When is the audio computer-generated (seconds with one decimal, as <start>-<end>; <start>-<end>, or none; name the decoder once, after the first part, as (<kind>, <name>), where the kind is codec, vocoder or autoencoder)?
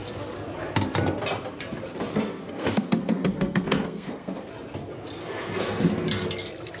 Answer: 2.1-4.5 (codec, SNAC); 5.2-5.8